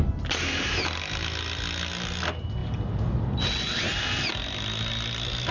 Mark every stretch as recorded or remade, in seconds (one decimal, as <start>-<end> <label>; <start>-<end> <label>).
0.0-5.5 recorded